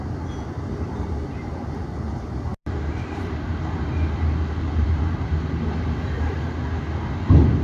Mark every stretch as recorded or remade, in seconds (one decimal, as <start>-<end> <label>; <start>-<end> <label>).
0.0-2.5 recorded; 2.5-3.6 remade; 3.6-4.8 recorded; 4.8-5.6 remade; 5.6-7.6 recorded